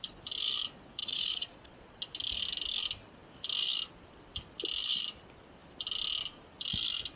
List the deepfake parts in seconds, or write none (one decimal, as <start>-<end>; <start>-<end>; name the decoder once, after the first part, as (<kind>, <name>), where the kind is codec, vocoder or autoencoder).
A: 1.0-2.0 (vocoder, Vocos)